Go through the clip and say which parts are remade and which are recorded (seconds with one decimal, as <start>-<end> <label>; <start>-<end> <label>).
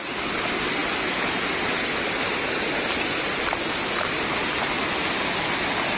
0.0-6.0 recorded